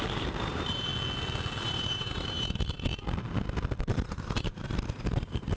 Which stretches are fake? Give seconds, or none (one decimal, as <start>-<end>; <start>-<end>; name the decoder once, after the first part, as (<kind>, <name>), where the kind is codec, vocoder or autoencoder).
0.0-0.9 (vocoder, BigVGAN v2); 1.6-2.9; 3.8-5.6